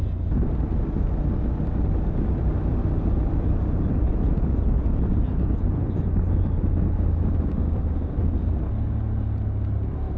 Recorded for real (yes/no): yes